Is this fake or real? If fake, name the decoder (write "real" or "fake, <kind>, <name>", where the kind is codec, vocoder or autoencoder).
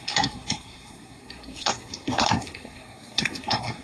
fake, codec, SNAC